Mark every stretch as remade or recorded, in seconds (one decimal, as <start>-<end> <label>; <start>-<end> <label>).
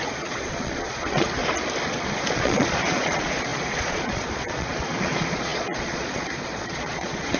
0.0-1.4 remade; 1.4-1.9 recorded; 1.9-7.4 remade